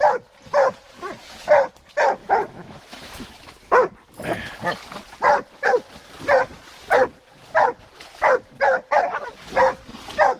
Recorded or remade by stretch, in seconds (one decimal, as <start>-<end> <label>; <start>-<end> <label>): 0.0-2.2 recorded; 2.2-3.5 remade; 3.5-10.4 recorded